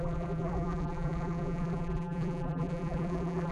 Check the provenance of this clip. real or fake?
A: fake